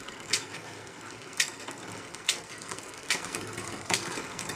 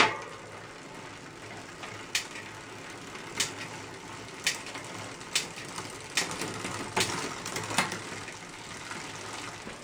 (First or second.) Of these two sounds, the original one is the second